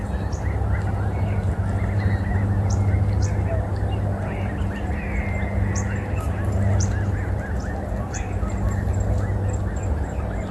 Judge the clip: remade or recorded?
recorded